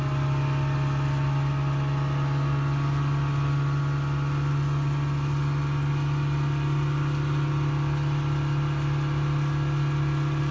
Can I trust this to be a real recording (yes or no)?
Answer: yes